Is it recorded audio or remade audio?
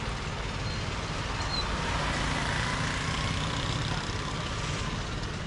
recorded